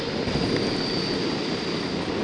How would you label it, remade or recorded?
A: recorded